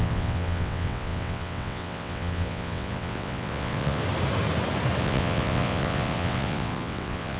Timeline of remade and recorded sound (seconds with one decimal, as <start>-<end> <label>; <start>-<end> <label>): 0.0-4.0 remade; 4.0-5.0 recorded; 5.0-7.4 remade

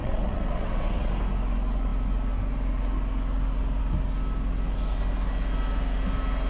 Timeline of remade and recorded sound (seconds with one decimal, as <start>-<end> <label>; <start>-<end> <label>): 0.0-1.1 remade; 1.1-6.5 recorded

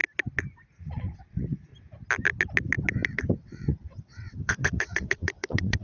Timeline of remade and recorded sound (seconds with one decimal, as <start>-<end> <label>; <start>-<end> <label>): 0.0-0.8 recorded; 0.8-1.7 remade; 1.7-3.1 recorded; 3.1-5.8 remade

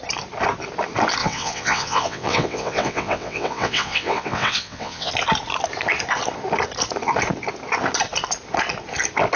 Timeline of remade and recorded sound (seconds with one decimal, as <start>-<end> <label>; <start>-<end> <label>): 0.0-1.2 recorded; 1.2-5.1 remade; 5.1-9.4 recorded

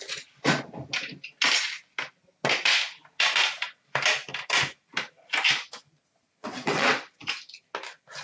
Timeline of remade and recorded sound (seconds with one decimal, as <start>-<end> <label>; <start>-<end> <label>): 0.0-6.4 recorded; 6.4-7.0 remade; 7.0-8.2 recorded

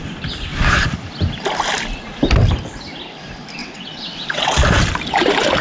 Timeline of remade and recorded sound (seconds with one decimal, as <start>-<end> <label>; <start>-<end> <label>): 0.0-3.6 recorded; 3.6-4.6 remade; 4.6-5.6 recorded

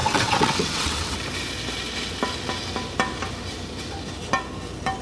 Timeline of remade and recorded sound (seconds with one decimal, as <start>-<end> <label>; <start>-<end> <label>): 0.0-1.2 remade; 1.2-5.0 recorded